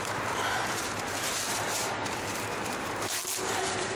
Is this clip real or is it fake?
fake